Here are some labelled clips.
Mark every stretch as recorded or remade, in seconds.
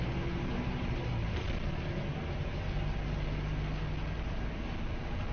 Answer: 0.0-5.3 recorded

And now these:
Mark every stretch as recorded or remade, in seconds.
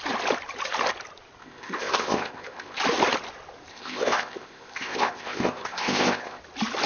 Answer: 0.0-1.4 recorded; 1.4-2.8 remade; 2.8-3.7 recorded; 3.7-6.4 remade; 6.4-6.9 recorded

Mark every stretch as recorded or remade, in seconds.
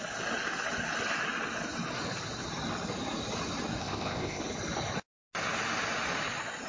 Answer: 0.0-3.8 recorded; 3.8-4.4 remade; 4.4-6.7 recorded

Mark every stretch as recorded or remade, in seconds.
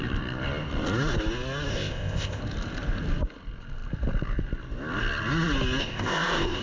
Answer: 0.0-1.7 recorded; 1.7-2.4 remade; 2.4-5.8 recorded; 5.8-6.6 remade